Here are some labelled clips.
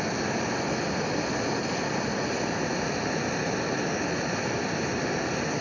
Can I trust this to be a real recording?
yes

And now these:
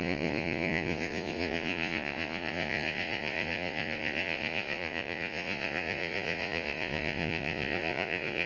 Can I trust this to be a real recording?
no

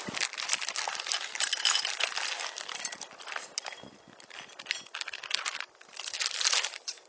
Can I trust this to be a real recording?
yes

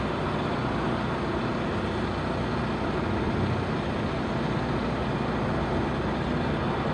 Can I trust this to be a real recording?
yes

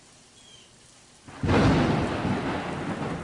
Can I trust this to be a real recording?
yes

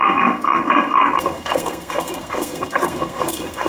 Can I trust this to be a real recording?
no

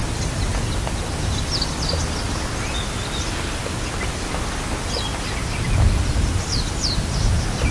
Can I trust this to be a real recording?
yes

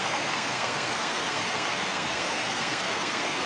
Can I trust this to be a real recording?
no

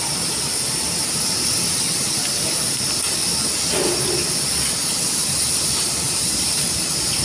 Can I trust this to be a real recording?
yes